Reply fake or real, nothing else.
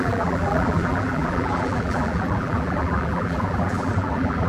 fake